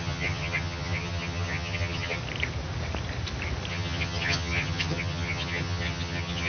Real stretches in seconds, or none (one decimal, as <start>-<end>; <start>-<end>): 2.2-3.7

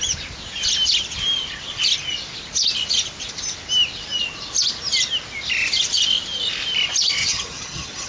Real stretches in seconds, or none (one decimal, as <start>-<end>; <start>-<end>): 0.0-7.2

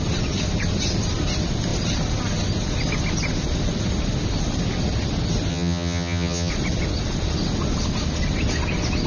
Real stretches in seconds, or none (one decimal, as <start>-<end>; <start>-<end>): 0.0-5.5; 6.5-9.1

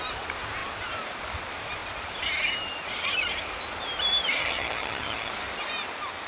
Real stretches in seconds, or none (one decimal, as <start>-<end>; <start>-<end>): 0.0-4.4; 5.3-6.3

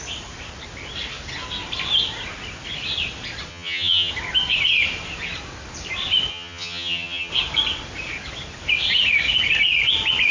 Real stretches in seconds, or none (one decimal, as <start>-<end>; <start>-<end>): 0.0-3.5; 4.1-6.3; 7.3-10.3

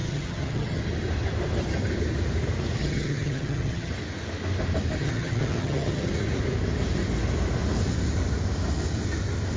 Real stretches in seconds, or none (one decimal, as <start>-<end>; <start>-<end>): 0.8-2.8; 3.9-5.0; 6.1-9.6

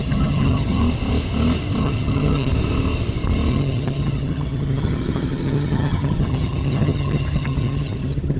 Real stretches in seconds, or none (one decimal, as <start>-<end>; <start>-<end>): 0.8-1.8; 2.5-3.5

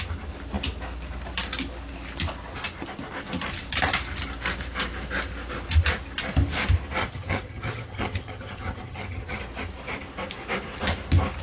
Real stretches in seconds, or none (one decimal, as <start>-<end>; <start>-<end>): 0.0-7.0; 9.4-11.4